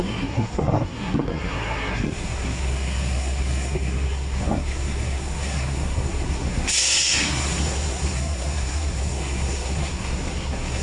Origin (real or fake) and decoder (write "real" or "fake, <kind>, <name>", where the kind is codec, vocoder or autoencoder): fake, codec, SNAC